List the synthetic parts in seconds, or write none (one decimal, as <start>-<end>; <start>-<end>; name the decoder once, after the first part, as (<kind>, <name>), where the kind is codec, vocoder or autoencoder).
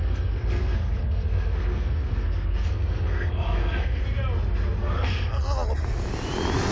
0.0-4.0 (codec, SNAC); 4.8-5.3